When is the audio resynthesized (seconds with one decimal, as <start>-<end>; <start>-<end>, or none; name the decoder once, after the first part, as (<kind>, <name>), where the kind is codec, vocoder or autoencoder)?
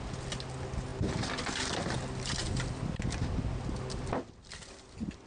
none